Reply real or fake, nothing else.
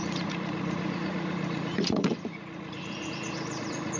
fake